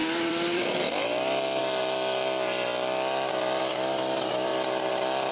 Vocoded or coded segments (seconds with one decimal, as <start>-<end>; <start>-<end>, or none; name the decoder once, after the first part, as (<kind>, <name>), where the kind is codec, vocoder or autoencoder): 0.0-1.6 (vocoder, BigVGAN v2); 3.7-4.5

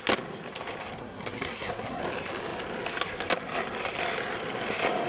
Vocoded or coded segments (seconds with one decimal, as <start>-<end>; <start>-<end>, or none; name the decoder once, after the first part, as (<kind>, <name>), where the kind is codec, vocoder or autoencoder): 1.0-2.0 (codec, SNAC)